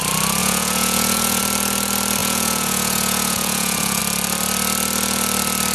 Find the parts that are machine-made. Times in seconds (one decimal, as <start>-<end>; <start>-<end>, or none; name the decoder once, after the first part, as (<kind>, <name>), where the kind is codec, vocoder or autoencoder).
0.4-1.4 (vocoder, Vocos); 2.2-4.0